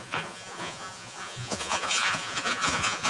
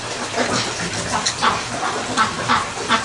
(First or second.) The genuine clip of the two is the second